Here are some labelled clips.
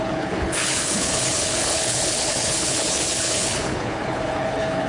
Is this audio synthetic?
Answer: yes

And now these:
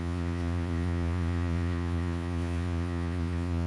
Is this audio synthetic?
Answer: yes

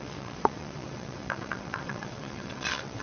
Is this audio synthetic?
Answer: yes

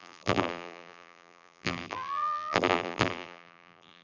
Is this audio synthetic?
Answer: yes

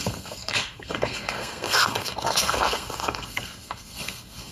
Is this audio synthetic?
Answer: yes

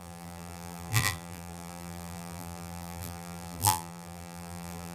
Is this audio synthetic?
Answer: yes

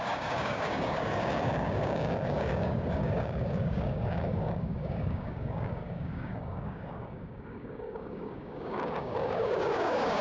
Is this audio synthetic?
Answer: yes